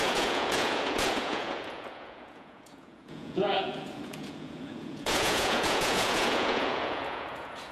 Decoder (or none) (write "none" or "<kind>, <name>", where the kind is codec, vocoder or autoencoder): vocoder, Vocos